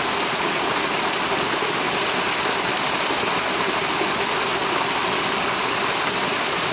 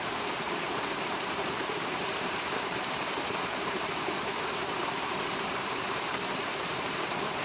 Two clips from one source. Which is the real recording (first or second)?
first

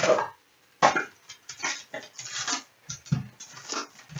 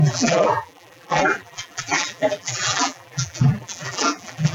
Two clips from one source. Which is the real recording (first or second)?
first